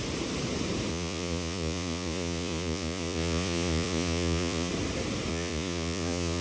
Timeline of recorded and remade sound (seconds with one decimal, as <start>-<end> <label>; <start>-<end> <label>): 0.0-0.9 recorded; 0.9-4.7 remade; 4.7-5.3 recorded; 5.3-6.4 remade